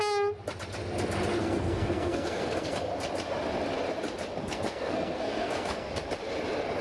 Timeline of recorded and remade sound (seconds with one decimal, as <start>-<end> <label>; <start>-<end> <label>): 0.0-1.4 recorded; 1.4-2.9 remade; 2.9-4.4 recorded; 4.4-5.9 remade; 5.9-6.8 recorded